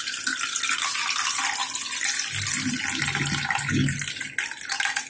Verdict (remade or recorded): recorded